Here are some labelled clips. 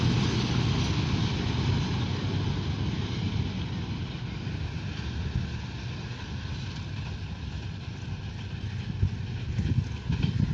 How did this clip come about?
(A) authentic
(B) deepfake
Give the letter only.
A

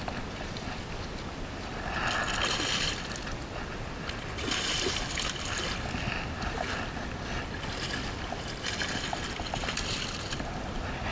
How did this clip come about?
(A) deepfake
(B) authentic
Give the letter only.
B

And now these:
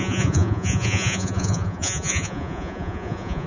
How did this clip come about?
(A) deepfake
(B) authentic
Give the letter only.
A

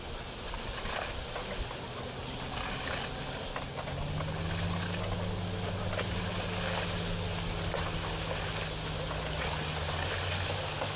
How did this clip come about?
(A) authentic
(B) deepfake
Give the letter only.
A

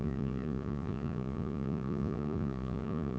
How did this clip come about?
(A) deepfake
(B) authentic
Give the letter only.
A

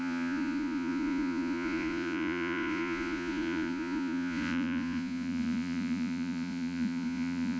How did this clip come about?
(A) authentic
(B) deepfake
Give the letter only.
B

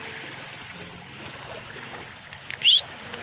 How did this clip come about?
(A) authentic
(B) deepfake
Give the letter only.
A